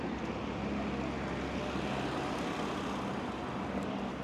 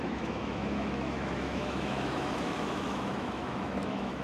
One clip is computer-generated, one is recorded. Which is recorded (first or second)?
first